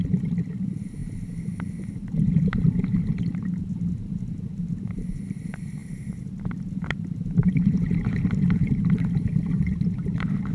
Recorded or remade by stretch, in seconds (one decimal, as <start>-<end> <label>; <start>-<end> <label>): 0.0-5.8 remade; 5.8-6.7 recorded; 6.7-10.5 remade